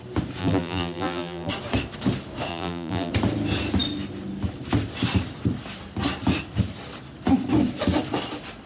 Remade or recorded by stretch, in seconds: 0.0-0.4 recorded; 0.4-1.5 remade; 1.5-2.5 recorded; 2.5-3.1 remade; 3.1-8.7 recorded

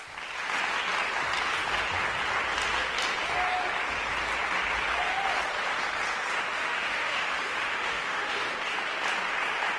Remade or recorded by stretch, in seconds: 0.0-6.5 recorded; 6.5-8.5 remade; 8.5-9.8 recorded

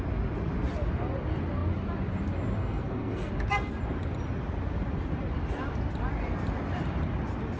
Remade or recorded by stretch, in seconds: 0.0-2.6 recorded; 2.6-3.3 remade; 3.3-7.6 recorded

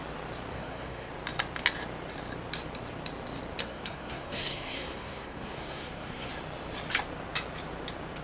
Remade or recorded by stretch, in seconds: 0.0-0.5 recorded; 0.5-1.1 remade; 1.1-3.6 recorded; 3.6-6.3 remade; 6.3-8.2 recorded